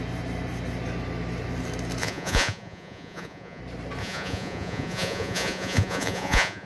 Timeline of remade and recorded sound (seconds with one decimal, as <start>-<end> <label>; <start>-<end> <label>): 0.0-2.0 recorded; 2.0-3.6 remade; 3.6-4.0 recorded; 4.0-6.7 remade